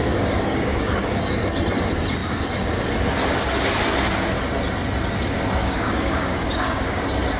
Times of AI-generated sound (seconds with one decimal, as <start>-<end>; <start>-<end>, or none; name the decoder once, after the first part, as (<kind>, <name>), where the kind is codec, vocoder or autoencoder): 0.0-1.2 (codec, DAC); 5.6-7.0